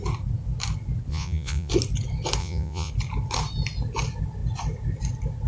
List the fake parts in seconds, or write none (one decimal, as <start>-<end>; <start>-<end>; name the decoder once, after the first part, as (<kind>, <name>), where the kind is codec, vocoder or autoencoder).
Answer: 1.1-1.7 (vocoder, Vocos); 2.4-2.9